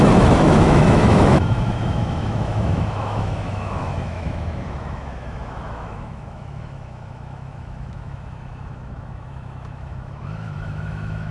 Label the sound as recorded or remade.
remade